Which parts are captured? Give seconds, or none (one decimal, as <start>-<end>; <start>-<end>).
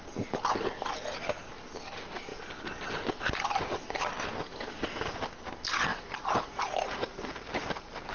0.0-5.9